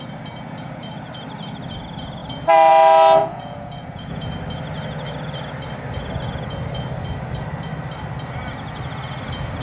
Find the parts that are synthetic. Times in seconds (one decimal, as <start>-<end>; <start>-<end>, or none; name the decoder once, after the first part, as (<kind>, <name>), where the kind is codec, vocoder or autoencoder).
3.2-4.1 (vocoder, Vocos)